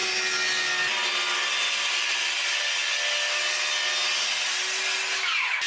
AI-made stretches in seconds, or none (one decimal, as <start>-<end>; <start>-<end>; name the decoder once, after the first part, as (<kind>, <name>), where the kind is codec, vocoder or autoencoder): none